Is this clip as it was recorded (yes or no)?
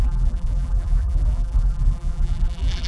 no